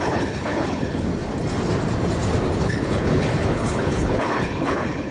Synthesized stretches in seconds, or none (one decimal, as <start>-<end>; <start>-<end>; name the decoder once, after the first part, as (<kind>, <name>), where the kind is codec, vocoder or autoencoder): 0.0-1.1 (codec, HILCodec); 2.6-5.1